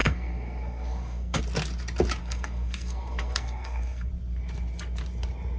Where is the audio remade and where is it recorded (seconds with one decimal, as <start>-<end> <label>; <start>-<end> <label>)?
0.0-1.4 remade; 1.4-2.2 recorded; 2.2-4.1 remade; 4.1-5.6 recorded